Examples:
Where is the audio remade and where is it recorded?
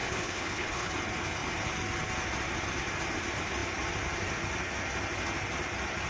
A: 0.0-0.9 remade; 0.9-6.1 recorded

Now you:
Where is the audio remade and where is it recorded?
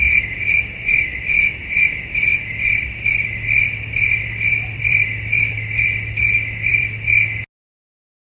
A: 0.0-2.3 recorded; 2.3-7.1 remade; 7.1-8.2 recorded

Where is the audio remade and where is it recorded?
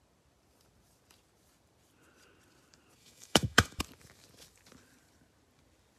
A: 0.0-3.0 recorded; 3.0-3.8 remade; 3.8-6.0 recorded